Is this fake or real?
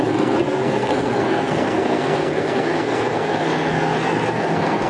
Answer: fake